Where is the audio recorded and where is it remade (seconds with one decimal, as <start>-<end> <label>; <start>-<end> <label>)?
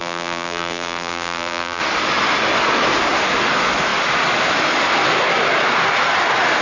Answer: 0.0-1.8 remade; 1.8-6.6 recorded